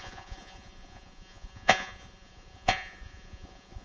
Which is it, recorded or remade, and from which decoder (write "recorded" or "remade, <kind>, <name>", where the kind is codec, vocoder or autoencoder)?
remade, vocoder, Vocos